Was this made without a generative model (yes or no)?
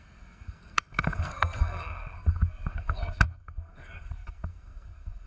no